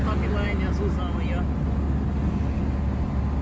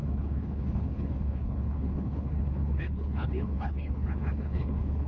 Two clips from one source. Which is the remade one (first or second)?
second